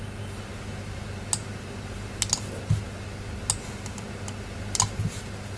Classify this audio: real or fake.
real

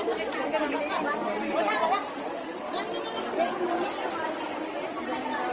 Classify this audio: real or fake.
real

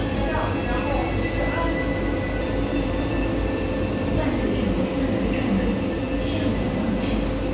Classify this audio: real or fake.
real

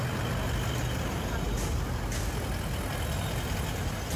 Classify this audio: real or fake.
real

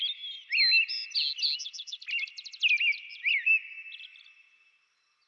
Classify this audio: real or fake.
real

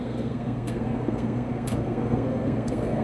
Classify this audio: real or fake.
fake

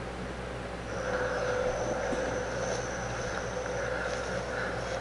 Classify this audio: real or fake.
real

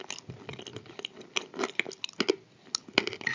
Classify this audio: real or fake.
real